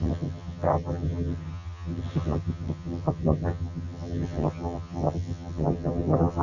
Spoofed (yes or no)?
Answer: yes